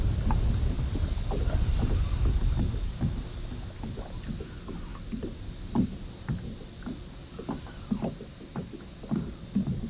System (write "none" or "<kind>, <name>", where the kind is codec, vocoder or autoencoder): none